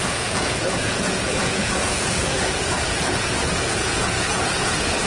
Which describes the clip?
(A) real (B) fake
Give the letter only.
B